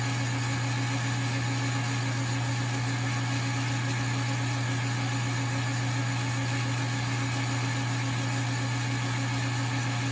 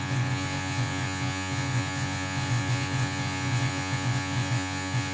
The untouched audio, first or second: first